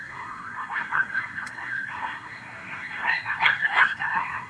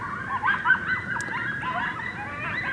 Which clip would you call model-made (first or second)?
first